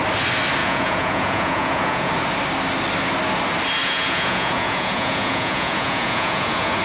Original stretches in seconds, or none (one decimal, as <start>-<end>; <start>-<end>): 0.0-0.6; 2.1-3.8